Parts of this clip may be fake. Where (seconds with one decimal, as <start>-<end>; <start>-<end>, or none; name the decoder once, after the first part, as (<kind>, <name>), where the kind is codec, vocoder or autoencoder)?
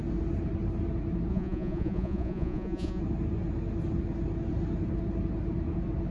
1.3-3.0 (vocoder, Vocos)